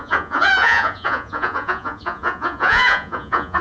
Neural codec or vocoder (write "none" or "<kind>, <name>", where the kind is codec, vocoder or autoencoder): vocoder, Vocos